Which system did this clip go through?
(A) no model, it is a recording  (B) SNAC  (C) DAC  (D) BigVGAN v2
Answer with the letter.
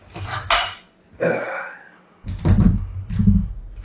A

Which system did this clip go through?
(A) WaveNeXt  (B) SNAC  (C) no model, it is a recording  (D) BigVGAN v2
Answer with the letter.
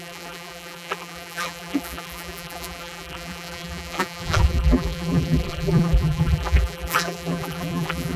D